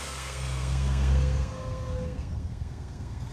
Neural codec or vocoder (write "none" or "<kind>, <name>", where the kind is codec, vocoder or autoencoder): codec, SNAC